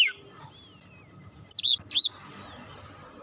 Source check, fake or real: real